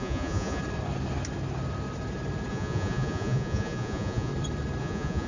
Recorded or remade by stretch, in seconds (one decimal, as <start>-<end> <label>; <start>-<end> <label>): 0.0-0.6 remade; 0.6-2.5 recorded; 2.5-4.3 remade; 4.3-4.8 recorded; 4.8-5.3 remade